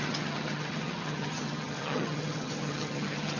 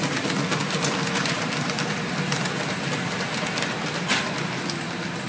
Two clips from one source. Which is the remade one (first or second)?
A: first